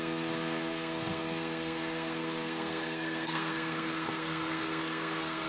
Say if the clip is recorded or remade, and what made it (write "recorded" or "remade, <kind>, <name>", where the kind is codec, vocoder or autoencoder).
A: remade, codec, SNAC